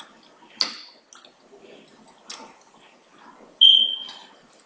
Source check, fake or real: real